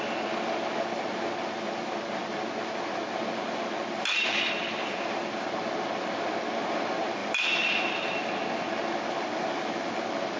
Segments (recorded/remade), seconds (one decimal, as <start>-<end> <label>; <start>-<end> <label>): 0.0-10.4 recorded